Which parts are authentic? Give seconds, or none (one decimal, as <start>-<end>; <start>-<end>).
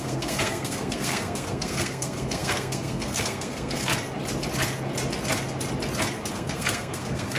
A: 3.9-6.3